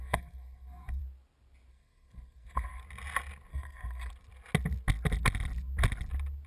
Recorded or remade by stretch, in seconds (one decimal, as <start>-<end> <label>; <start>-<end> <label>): 0.0-1.0 remade; 1.0-1.7 recorded; 1.7-2.8 remade; 2.8-3.5 recorded; 3.5-4.1 remade; 4.1-6.5 recorded

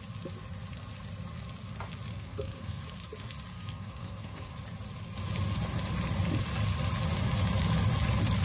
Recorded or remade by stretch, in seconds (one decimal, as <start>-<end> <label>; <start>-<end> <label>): 0.0-2.1 recorded; 2.1-2.8 remade; 2.8-3.5 recorded; 3.5-4.5 remade; 4.5-8.4 recorded

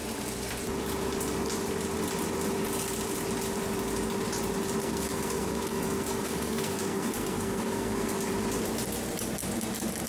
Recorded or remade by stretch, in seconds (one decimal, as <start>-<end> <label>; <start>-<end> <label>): 0.0-4.8 recorded; 4.8-8.2 remade; 8.2-10.1 recorded

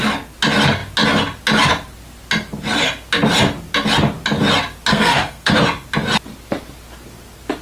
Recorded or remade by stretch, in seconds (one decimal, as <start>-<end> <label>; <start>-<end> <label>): 0.0-4.9 recorded; 4.9-5.5 remade; 5.5-7.6 recorded

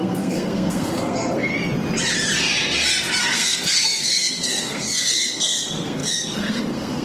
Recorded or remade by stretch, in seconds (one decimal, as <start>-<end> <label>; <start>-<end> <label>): 0.0-1.5 remade; 1.5-3.2 recorded; 3.2-7.0 remade

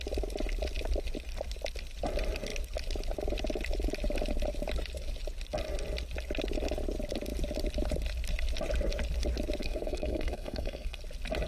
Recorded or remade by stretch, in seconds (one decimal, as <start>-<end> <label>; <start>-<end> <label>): 0.0-9.6 recorded; 9.6-11.0 remade; 11.0-11.5 recorded